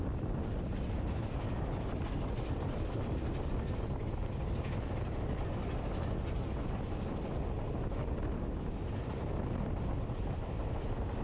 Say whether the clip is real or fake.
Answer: real